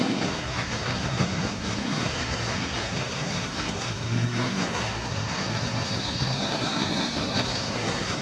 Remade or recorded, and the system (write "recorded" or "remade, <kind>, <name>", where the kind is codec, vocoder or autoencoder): remade, codec, SNAC